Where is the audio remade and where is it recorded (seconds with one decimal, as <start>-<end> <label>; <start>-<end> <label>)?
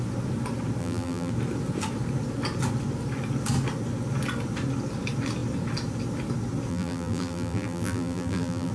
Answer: 0.0-0.8 recorded; 0.8-1.3 remade; 1.3-6.7 recorded; 6.7-8.7 remade